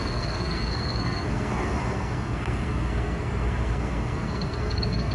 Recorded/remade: remade